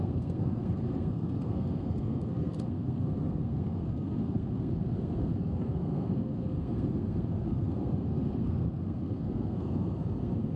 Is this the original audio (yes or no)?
no